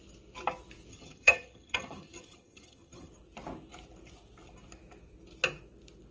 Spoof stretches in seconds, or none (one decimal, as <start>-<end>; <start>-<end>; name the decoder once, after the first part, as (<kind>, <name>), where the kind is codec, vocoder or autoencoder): 0.9-3.1 (vocoder, HiFi-GAN)